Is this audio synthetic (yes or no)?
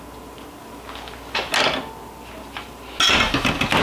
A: no